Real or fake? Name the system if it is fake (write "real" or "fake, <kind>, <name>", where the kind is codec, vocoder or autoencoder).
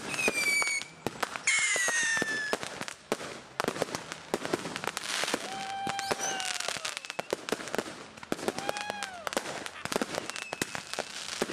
real